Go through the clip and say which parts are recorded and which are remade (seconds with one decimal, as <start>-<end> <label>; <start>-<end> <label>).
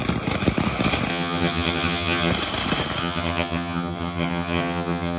0.0-1.1 recorded; 1.1-2.3 remade; 2.3-3.0 recorded; 3.0-5.2 remade